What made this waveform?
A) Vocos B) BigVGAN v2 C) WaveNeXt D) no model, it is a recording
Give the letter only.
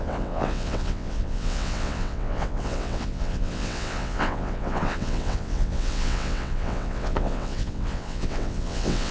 C